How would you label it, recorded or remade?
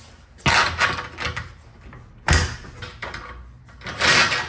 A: recorded